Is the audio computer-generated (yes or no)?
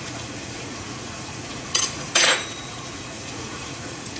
yes